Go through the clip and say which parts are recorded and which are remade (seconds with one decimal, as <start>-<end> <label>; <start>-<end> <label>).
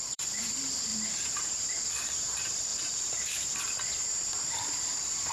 0.0-0.9 remade; 0.9-1.9 recorded; 1.9-2.7 remade; 2.7-5.3 recorded